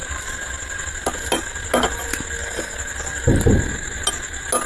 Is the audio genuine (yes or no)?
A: yes